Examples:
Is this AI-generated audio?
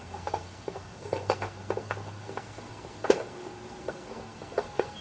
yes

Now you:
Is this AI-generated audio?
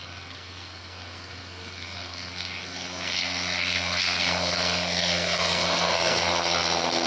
yes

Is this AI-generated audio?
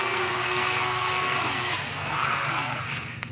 yes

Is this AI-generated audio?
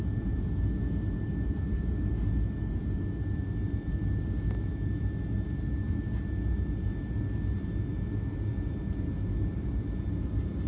no